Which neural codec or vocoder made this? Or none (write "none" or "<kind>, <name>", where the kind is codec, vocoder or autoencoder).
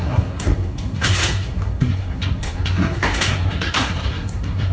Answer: codec, SNAC